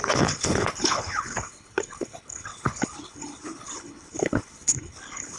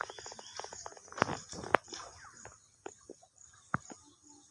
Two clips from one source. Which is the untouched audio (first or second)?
second